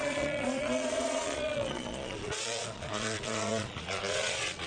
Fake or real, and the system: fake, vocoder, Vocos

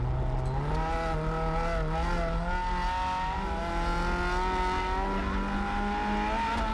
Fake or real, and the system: real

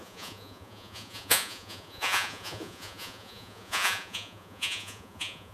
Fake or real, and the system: fake, vocoder, Vocos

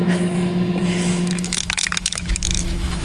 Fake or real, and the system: fake, autoencoder, DAC-VAE